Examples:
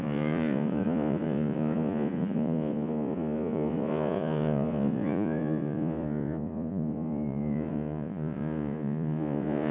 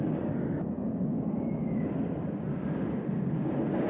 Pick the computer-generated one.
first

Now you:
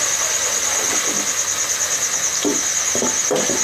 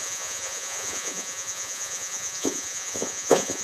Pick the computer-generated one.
second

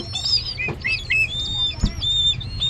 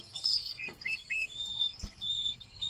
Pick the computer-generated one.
second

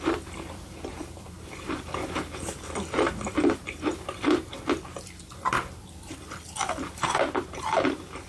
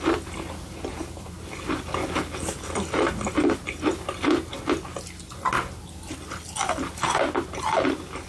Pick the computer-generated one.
first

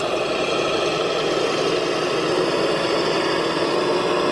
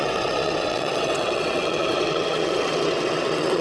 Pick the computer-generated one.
second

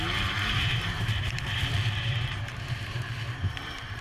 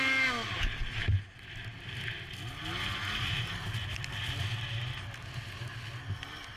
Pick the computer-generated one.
first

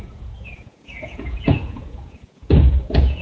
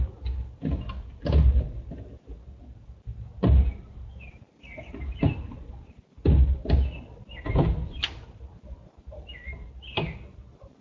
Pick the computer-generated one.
first